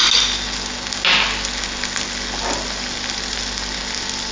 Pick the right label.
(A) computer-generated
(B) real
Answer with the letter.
B